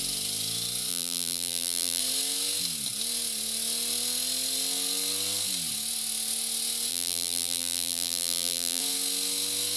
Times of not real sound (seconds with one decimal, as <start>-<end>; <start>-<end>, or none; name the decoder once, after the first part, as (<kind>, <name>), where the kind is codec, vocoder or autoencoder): 0.9-2.0 (vocoder, BigVGAN v2); 6.9-8.8